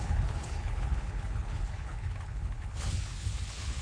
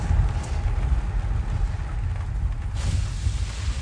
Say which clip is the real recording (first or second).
second